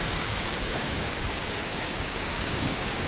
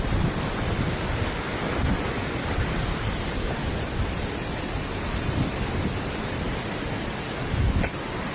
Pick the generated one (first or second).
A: first